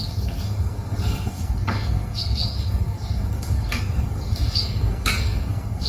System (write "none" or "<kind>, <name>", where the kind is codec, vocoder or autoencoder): codec, SNAC